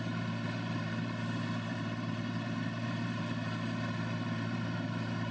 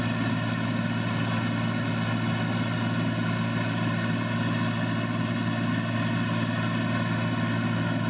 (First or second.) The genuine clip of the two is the second